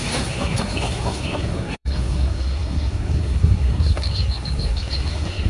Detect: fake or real fake